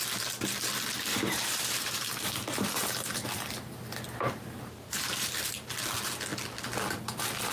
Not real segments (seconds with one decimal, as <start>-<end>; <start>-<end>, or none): 1.1-5.5